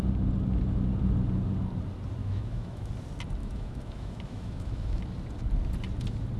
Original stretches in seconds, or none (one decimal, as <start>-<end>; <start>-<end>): 0.0-2.2; 2.9-3.4; 5.0-6.4